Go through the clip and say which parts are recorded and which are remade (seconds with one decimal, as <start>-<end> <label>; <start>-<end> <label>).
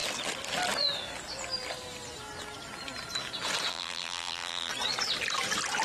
0.0-3.7 recorded; 3.7-4.7 remade; 4.7-5.8 recorded